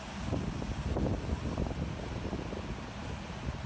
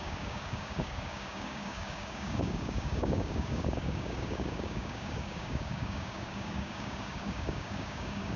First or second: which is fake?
second